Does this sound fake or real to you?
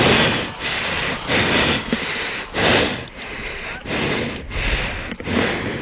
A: real